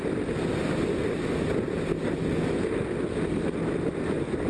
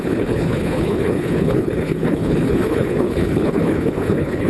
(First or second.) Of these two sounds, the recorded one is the first